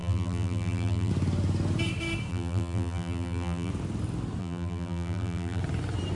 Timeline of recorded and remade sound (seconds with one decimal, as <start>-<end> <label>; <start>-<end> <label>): 0.0-1.1 remade; 1.1-2.3 recorded; 2.3-3.7 remade; 3.7-4.4 recorded; 4.4-5.6 remade; 5.6-6.2 recorded